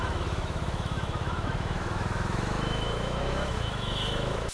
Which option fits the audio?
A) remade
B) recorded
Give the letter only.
A